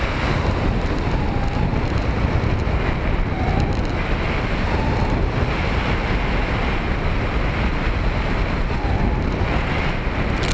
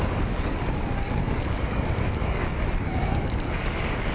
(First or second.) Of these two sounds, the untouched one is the first